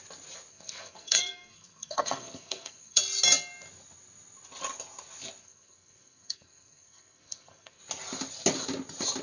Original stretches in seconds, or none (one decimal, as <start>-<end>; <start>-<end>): 0.0-0.5; 3.0-5.4; 7.8-9.2